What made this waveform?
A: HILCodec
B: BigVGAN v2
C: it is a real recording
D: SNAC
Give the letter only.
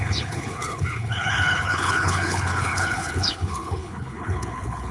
A